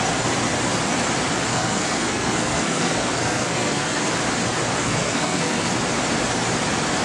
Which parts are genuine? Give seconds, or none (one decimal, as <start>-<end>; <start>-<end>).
0.0-1.5; 4.1-4.8; 5.7-7.0